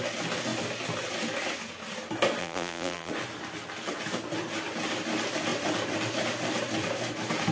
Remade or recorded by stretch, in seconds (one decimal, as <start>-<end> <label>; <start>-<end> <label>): 0.0-2.4 recorded; 2.4-3.1 remade; 3.1-7.5 recorded